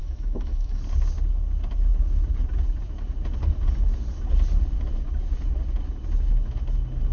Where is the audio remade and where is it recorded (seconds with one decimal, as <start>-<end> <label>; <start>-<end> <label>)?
0.0-0.8 remade; 0.8-7.1 recorded